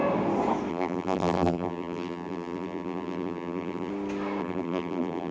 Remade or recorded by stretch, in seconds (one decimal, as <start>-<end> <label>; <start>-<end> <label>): 0.0-0.7 recorded; 0.7-3.9 remade; 3.9-4.4 recorded; 4.4-5.3 remade